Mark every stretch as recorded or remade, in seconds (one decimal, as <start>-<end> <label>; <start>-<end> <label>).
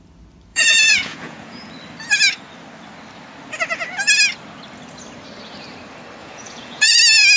0.0-0.5 recorded; 0.5-1.7 remade; 1.7-6.2 recorded; 6.2-7.0 remade; 7.0-7.4 recorded